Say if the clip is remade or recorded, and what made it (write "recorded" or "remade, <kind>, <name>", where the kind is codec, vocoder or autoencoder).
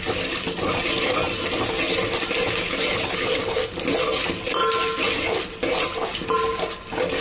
recorded